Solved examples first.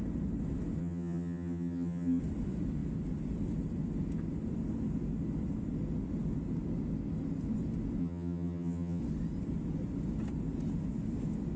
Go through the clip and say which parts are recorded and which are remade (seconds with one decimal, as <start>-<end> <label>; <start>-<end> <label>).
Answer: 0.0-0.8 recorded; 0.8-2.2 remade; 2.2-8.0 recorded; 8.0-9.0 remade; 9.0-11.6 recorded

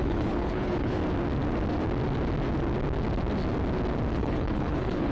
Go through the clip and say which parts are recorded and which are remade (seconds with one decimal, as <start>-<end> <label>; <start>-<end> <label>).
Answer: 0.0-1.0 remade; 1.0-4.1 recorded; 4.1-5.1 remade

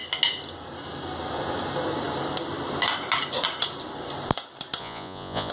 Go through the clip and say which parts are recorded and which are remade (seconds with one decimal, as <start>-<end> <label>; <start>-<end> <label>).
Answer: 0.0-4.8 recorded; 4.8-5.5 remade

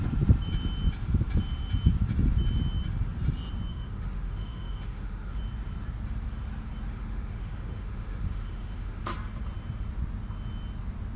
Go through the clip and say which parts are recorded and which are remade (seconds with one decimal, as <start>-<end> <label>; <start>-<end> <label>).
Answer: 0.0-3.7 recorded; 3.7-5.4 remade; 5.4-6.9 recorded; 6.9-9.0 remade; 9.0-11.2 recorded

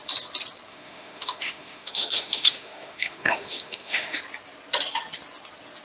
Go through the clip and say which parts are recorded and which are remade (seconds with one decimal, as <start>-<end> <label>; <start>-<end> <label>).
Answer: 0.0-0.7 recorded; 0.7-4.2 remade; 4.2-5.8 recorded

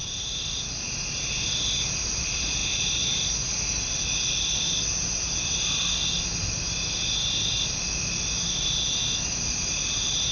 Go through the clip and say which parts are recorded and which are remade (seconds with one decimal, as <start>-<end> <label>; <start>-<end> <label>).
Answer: 0.0-10.3 recorded

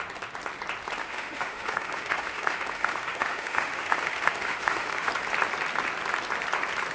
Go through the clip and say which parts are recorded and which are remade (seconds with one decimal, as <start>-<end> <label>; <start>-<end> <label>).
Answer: 0.0-1.0 recorded; 1.0-5.1 remade; 5.1-6.9 recorded